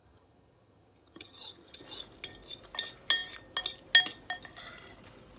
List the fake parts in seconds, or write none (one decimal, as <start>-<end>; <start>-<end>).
0.0-1.8